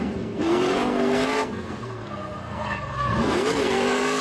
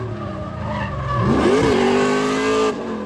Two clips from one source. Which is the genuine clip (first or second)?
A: second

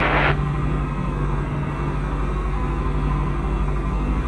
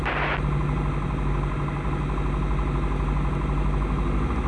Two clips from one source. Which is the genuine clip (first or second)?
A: second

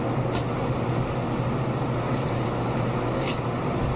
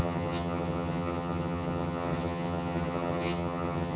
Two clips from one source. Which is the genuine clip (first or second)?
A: first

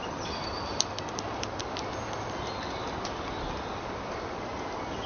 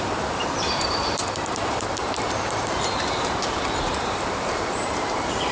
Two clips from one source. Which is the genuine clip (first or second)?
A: first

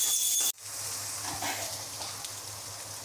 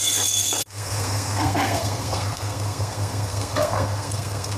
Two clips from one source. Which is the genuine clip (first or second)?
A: first